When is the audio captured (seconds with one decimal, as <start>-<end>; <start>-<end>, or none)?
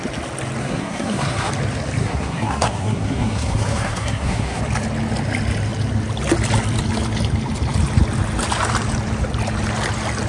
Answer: 0.0-0.6; 1.5-2.0; 4.6-10.3